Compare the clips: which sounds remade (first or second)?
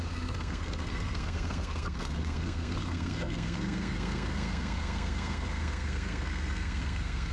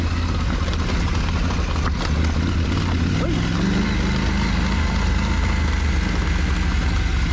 first